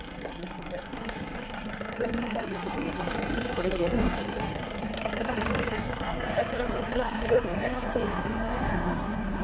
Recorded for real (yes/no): no